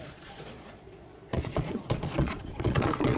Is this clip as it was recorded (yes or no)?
no